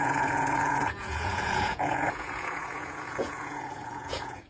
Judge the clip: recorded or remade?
remade